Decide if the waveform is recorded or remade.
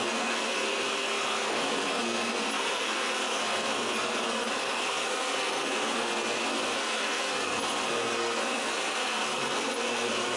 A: remade